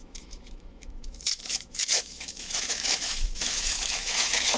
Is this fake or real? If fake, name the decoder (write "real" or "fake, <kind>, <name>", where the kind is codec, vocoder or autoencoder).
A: fake, autoencoder, DAC-VAE